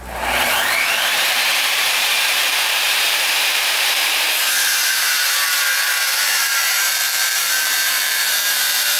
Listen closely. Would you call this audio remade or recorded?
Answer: remade